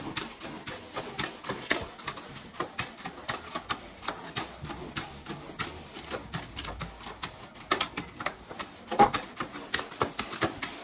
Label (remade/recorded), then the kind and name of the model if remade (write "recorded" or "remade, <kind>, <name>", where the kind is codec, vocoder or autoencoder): recorded